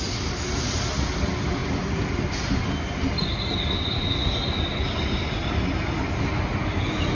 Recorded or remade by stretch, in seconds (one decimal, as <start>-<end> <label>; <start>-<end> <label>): 0.0-7.1 recorded